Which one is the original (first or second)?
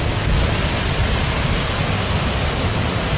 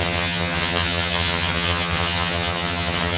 first